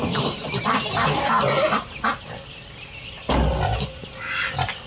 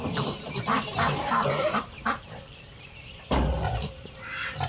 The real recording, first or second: first